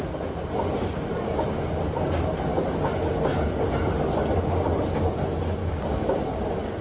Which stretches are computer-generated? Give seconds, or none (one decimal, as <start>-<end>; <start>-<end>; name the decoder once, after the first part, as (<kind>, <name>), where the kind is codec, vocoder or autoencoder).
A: 5.6-6.2 (codec, DAC)